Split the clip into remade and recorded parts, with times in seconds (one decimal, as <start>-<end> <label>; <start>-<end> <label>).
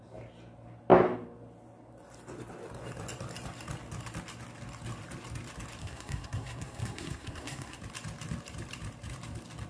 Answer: 0.0-5.8 recorded; 5.8-7.8 remade; 7.8-9.7 recorded